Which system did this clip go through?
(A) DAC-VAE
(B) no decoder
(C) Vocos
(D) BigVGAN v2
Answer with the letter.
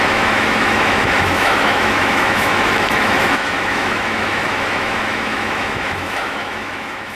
A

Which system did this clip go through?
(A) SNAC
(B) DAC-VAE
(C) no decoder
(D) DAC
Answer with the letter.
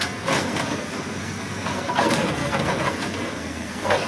A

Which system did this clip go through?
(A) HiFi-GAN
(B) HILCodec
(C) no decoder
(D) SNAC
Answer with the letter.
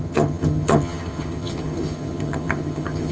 A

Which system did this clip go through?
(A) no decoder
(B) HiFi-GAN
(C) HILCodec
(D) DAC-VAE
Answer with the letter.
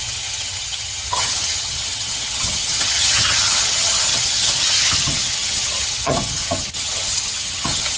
B